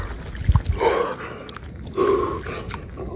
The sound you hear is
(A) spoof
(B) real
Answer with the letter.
B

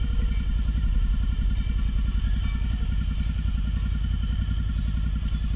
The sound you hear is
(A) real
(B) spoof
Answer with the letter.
A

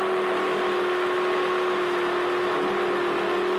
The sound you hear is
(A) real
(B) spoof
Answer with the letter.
A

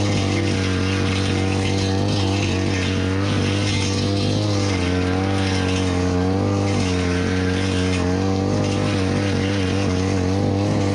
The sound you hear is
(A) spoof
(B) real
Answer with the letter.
B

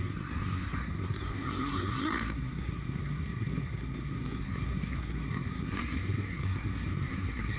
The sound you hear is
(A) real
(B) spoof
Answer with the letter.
B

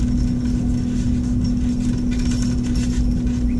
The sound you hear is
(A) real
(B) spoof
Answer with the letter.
A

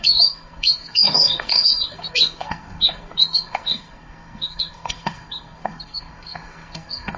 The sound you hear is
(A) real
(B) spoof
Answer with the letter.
B